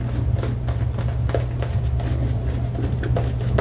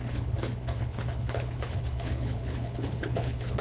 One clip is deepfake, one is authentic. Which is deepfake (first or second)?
second